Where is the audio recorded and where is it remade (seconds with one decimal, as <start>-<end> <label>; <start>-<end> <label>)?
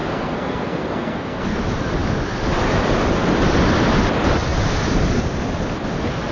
0.0-1.6 remade; 1.6-6.3 recorded